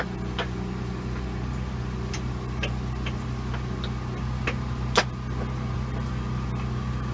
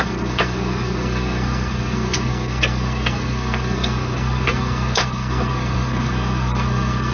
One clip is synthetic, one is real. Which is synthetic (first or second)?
second